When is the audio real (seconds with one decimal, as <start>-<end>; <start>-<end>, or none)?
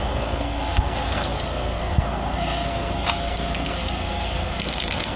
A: none